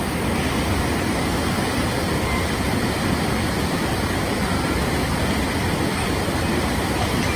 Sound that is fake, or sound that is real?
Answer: real